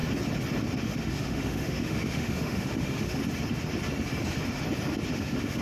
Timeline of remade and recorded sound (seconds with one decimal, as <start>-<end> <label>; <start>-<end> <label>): 0.0-0.8 recorded; 0.8-3.2 remade; 3.2-5.1 recorded; 5.1-5.6 remade